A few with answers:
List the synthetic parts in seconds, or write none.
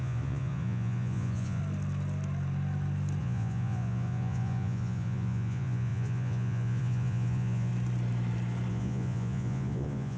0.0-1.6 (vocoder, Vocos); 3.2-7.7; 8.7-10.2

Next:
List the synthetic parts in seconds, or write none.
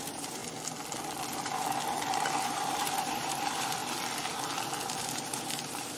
0.0-0.4 (vocoder, BigVGAN v2); 2.4-3.8; 5.0-6.0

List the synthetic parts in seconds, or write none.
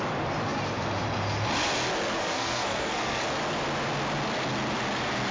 2.2-3.2 (codec, SNAC)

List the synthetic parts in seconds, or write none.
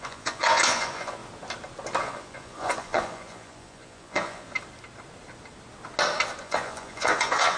0.0-1.2 (vocoder, Vocos); 2.0-4.5; 6.4-7.6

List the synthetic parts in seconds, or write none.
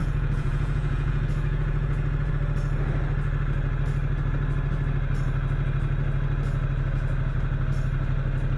0.0-2.3 (vocoder, Vocos)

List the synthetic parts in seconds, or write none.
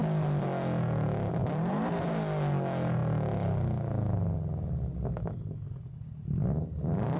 none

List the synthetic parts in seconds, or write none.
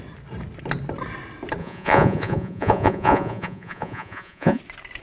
1.6-4.6 (vocoder, Vocos)